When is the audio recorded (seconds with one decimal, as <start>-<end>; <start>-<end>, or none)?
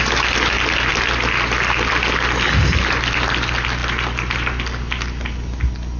0.0-6.0